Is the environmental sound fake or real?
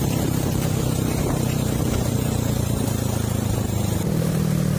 fake